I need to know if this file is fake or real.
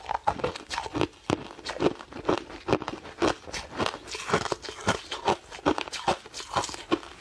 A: real